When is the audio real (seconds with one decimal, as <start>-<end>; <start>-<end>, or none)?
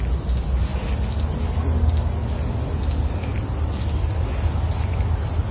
0.0-5.5